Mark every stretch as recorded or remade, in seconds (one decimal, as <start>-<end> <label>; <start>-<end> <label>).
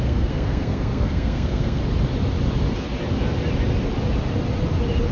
0.0-1.8 remade; 1.8-5.1 recorded